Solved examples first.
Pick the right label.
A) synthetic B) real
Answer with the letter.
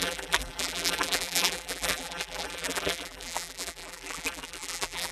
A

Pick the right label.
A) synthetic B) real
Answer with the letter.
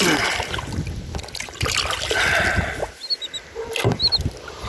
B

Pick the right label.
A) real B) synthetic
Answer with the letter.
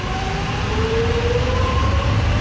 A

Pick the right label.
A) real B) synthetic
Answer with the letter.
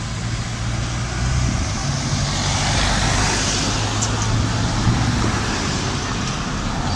A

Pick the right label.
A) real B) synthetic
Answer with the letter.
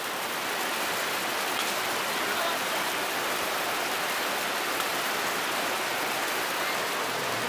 A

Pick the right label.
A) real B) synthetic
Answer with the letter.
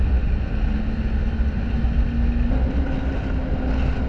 A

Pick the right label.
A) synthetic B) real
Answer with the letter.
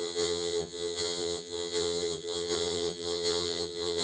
A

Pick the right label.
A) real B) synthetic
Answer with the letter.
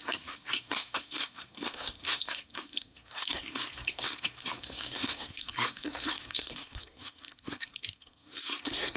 B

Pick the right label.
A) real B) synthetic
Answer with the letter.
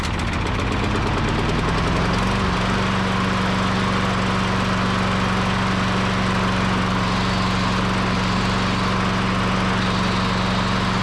A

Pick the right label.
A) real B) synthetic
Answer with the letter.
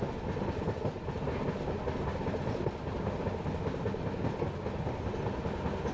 A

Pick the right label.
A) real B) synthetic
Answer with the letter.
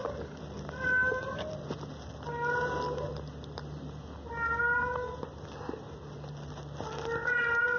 A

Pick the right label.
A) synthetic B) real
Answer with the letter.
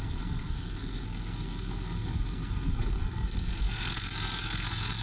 A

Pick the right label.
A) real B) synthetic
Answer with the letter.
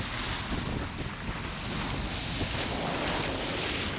A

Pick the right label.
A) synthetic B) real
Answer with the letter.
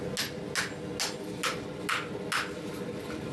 B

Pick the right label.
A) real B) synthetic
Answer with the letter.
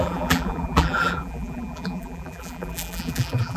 B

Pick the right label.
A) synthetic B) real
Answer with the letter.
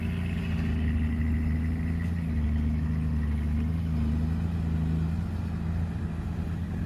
B